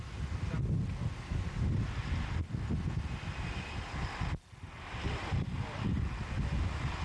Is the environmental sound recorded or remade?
recorded